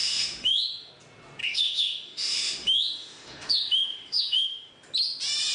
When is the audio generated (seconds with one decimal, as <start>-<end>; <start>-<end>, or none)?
0.0-0.9; 1.4-4.7